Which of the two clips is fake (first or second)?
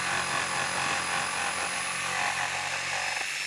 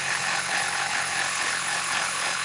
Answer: second